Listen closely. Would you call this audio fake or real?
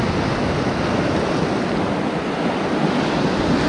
real